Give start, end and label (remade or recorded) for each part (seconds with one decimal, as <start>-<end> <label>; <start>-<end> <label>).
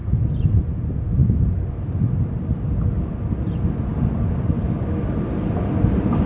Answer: 0.0-6.3 recorded